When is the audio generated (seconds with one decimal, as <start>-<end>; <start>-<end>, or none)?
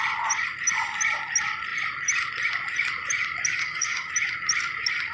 3.6-4.1